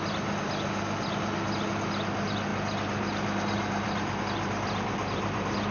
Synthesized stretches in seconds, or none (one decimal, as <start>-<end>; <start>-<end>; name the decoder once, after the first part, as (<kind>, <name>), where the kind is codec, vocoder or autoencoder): none